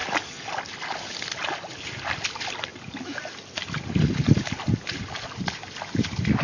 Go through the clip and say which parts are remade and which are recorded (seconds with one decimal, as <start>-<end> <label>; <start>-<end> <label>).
0.0-6.4 recorded